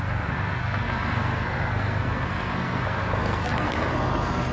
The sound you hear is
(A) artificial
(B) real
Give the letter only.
A